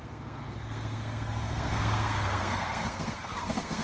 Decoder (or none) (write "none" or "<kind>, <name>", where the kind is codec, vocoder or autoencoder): codec, SNAC